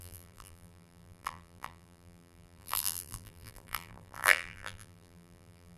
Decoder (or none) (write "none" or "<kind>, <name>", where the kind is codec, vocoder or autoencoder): vocoder, BigVGAN v2